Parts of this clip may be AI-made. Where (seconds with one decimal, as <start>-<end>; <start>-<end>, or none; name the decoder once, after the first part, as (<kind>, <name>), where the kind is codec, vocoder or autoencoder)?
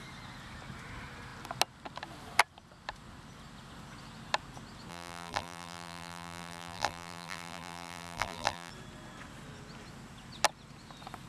4.9-8.7 (vocoder, BigVGAN v2)